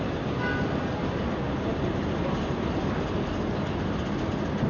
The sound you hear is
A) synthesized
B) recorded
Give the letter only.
B